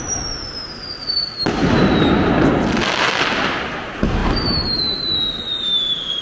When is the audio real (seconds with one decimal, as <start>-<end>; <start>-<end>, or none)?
0.0-6.2